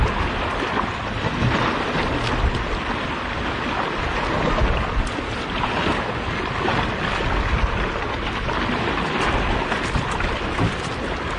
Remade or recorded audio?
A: recorded